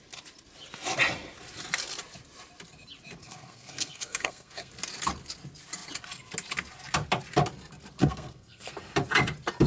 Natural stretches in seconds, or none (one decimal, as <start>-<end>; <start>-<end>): 0.0-3.2; 4.7-8.0; 8.8-9.7